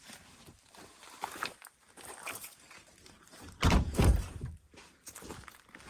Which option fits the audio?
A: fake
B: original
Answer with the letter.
A